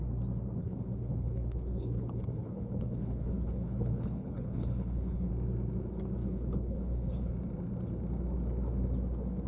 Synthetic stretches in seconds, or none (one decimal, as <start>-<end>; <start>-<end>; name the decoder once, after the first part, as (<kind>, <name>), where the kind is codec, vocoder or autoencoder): 0.6-5.3 (codec, HILCodec); 6.2-7.3